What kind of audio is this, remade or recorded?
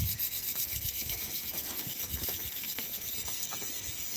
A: remade